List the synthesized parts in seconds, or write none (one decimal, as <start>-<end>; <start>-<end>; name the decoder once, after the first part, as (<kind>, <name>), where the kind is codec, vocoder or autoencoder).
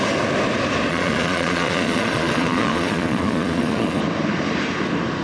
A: 0.9-4.0 (vocoder, Vocos)